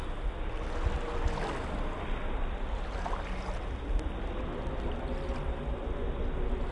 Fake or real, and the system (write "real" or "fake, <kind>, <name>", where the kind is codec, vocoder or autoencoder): real